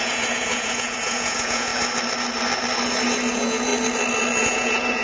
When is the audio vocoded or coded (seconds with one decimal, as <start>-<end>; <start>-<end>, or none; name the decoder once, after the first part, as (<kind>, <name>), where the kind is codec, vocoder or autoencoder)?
0.0-1.7 (vocoder, Vocos); 3.3-3.7; 4.4-5.0